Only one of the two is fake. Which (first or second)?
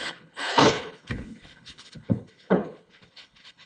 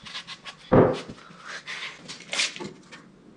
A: first